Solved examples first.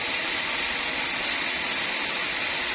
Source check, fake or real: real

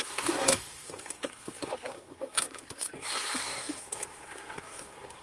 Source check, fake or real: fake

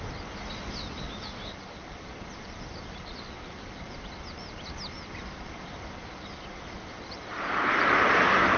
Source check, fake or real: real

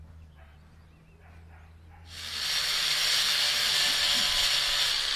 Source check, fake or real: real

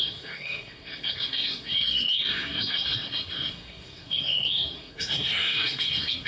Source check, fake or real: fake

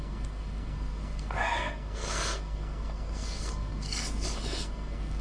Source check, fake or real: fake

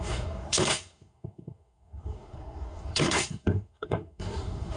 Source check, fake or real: fake